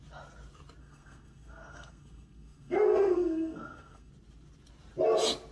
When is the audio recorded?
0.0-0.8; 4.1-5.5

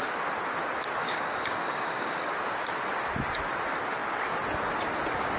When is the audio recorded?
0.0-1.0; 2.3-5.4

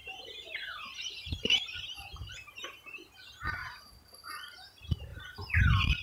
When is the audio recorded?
1.8-3.6; 4.3-6.0

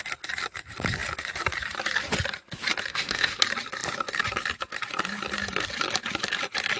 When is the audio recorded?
0.0-2.9; 3.4-6.8

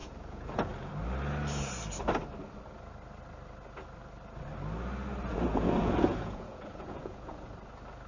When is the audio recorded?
0.9-5.3; 7.5-8.1

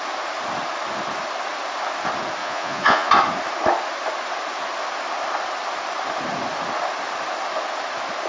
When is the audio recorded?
0.0-2.4; 3.1-8.3

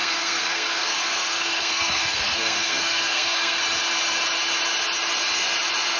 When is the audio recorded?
3.6-6.0

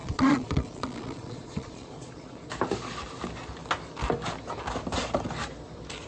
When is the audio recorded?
2.4-6.1